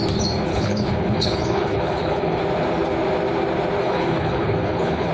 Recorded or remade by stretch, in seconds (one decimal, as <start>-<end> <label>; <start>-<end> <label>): 0.0-0.5 recorded; 0.5-2.4 remade; 2.4-3.8 recorded; 3.8-5.1 remade